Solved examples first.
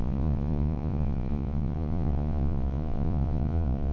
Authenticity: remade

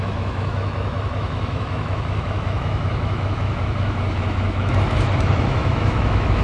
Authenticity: remade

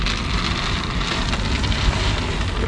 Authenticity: recorded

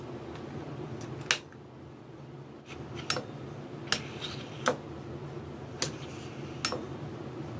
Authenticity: recorded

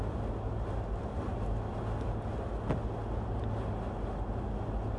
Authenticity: recorded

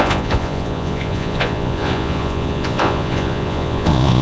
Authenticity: remade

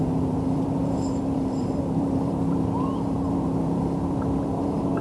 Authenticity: remade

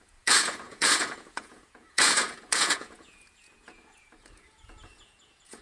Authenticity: remade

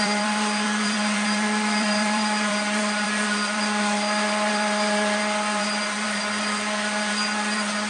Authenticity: remade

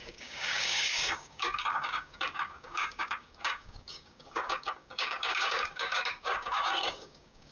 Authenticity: remade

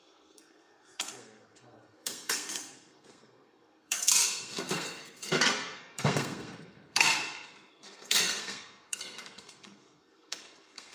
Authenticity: remade